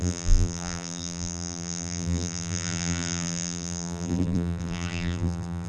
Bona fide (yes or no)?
no